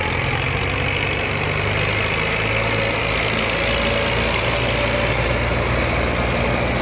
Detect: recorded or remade recorded